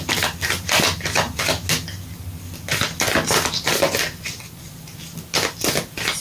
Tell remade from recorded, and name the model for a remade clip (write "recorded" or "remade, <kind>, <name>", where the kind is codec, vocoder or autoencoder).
recorded